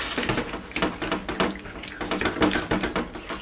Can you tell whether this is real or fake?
real